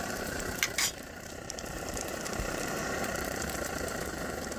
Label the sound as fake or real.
fake